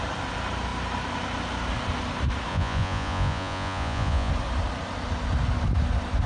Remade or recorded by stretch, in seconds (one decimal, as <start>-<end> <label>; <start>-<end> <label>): 0.0-2.5 recorded; 2.5-4.3 remade; 4.3-6.3 recorded